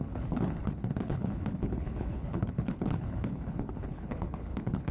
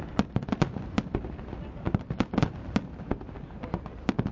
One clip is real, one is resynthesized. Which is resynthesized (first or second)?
first